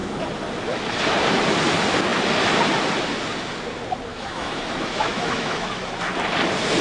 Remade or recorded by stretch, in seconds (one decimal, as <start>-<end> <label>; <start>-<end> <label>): 0.0-4.1 recorded; 4.1-5.7 remade; 5.7-6.8 recorded